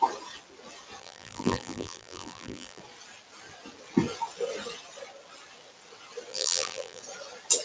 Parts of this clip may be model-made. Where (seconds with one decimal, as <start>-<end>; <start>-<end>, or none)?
1.0-2.8; 6.3-7.0